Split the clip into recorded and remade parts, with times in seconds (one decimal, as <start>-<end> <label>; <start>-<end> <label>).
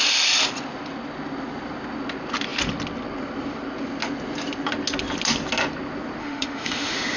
0.0-6.2 recorded; 6.2-7.2 remade